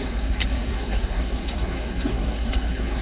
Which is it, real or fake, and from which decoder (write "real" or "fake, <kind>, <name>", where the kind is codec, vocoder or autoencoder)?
fake, codec, SNAC